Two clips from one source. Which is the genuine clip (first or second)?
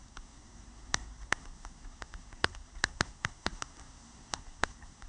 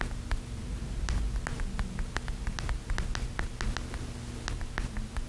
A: second